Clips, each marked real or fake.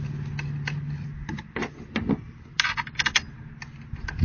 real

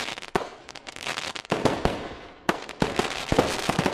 fake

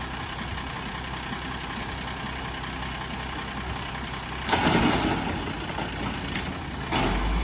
real